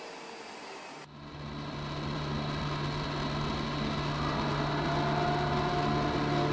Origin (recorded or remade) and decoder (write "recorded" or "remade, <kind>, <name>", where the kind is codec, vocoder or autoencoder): recorded